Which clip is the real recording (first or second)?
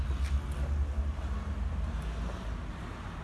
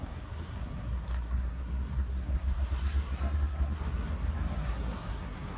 first